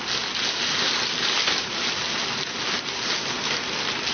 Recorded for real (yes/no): yes